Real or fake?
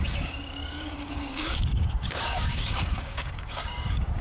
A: fake